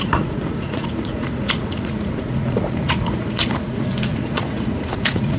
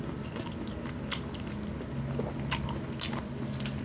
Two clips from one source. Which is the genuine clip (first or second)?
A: second